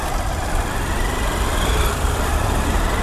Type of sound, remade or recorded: recorded